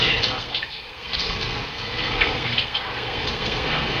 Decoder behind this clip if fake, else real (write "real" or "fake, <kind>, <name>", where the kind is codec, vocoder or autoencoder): fake, codec, SNAC